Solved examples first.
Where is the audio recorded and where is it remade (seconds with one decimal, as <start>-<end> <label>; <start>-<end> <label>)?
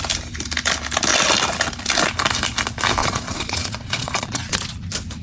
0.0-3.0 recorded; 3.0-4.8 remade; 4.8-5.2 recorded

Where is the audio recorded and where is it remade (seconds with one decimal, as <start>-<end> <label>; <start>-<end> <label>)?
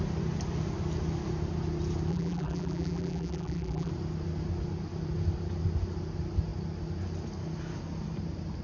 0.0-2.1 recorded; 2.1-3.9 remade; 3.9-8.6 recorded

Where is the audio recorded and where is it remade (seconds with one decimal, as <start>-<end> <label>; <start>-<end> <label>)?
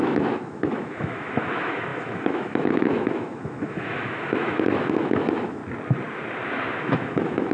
0.0-5.6 remade; 5.6-6.8 recorded; 6.8-7.5 remade